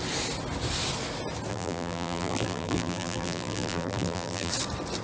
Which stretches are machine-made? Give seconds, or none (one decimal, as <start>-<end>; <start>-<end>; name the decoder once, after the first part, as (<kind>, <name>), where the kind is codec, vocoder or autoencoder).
1.5-4.5 (vocoder, BigVGAN v2)